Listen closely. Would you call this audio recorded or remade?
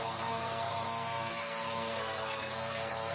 remade